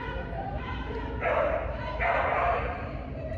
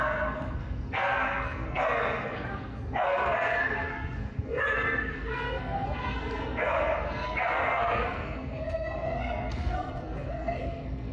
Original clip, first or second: first